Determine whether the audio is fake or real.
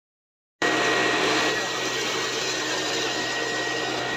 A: real